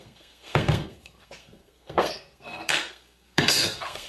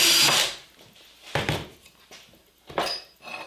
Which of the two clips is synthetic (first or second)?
first